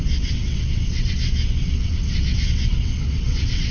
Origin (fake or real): fake